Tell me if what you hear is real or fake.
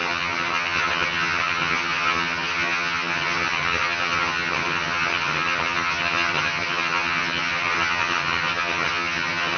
fake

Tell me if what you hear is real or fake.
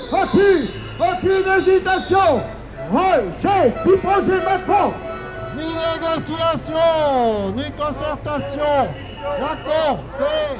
real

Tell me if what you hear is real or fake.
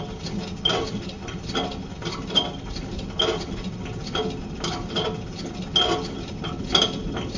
real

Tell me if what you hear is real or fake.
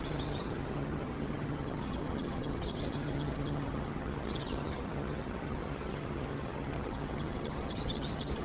fake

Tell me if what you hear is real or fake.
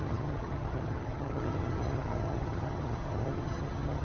fake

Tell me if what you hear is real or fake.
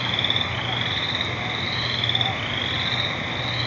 real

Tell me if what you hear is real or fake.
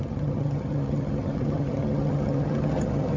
fake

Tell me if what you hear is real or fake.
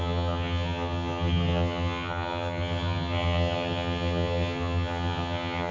fake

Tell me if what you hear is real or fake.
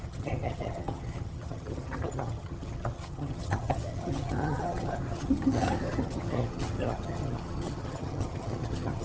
fake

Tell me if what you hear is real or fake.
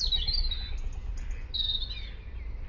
real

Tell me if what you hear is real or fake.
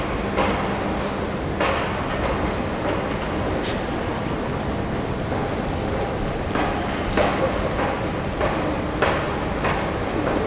real